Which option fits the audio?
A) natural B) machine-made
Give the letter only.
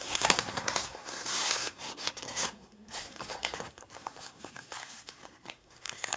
B